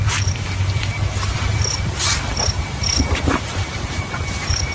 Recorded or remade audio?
remade